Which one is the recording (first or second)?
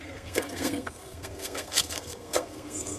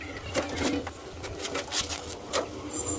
second